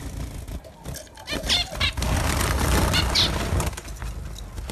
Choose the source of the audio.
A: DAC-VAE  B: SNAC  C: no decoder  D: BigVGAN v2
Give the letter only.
C